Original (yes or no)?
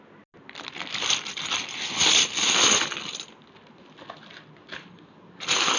yes